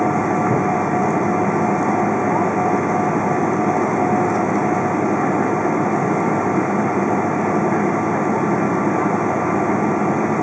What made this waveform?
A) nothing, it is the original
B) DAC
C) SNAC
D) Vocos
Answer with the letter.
A